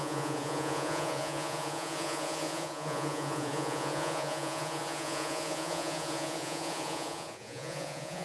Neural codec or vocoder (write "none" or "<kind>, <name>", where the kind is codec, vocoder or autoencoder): vocoder, Vocos